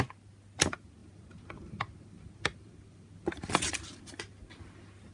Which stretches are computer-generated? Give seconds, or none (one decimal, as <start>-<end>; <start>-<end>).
1.0-4.0